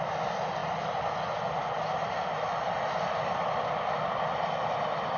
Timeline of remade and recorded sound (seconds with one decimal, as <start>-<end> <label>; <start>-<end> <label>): 0.0-5.2 recorded